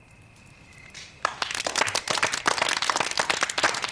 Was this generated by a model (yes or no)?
no